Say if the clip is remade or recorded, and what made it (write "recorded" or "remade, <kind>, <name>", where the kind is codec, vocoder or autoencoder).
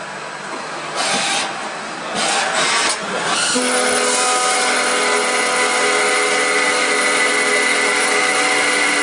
recorded